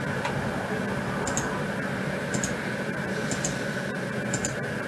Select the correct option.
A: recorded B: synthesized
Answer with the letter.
A